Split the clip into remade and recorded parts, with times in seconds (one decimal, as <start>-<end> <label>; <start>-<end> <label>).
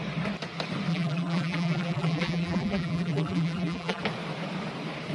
0.0-0.9 recorded; 0.9-4.0 remade; 4.0-5.1 recorded